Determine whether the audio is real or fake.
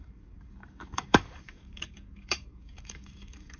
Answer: fake